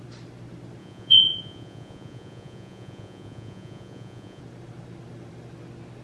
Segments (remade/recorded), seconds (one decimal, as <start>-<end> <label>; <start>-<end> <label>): 0.0-0.8 recorded; 0.8-4.4 remade; 4.4-6.0 recorded